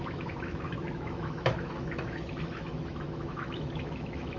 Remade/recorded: remade